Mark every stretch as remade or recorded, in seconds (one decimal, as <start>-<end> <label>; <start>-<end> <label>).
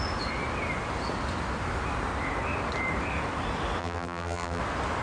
0.0-3.8 recorded; 3.8-4.6 remade; 4.6-5.0 recorded